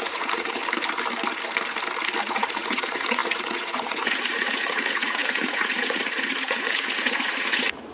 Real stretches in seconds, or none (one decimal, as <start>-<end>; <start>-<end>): 0.6-2.2